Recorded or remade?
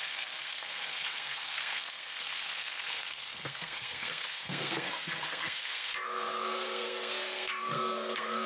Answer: remade